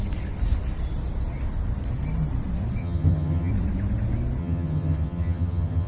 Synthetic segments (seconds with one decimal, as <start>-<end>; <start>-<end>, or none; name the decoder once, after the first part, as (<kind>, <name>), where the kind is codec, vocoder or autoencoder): 2.8-3.5 (vocoder, HiFi-GAN); 4.4-5.9

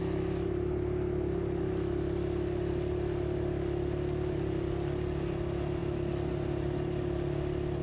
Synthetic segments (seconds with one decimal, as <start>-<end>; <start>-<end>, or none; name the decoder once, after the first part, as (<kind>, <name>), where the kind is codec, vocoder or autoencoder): none

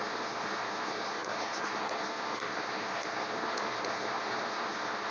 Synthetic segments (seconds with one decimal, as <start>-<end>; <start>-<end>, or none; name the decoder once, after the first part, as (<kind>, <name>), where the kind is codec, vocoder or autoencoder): 0.0-5.1 (codec, SNAC)

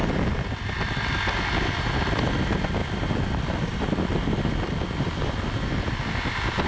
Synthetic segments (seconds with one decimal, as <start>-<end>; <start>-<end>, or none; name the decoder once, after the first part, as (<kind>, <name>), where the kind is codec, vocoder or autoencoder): 0.0-0.7 (vocoder, BigVGAN v2); 2.8-5.9

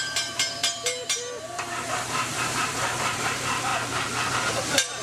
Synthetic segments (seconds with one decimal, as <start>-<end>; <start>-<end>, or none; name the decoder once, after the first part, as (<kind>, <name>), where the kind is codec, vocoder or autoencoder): 0.0-3.7 (vocoder, BigVGAN v2); 4.3-5.0

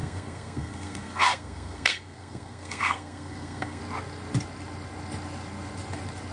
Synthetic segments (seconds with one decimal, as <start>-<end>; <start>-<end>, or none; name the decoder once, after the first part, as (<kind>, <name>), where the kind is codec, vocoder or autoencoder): 0.0-3.8 (codec, SNAC)

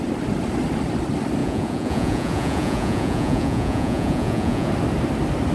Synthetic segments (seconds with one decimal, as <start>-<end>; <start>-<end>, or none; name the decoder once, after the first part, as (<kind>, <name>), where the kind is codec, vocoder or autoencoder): 1.4-4.7 (vocoder, Vocos)

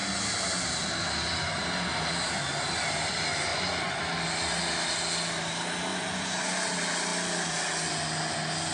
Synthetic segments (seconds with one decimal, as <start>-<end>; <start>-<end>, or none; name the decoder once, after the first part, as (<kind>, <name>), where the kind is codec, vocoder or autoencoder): 3.5-4.0 (vocoder, Vocos); 5.9-6.5